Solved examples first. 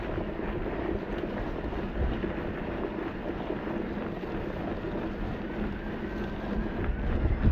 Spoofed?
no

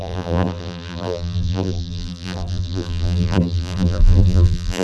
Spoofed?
yes